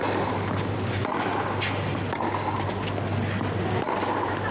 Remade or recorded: recorded